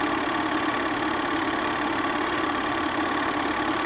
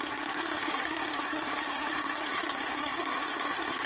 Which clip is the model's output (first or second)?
second